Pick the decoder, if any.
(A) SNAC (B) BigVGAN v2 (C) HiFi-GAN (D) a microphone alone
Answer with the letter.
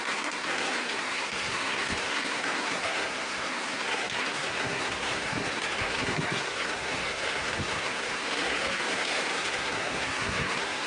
A